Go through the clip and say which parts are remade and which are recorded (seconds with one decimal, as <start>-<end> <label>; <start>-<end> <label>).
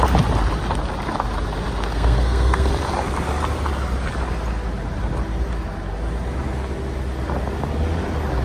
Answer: 0.0-1.9 recorded; 1.9-2.7 remade; 2.7-8.4 recorded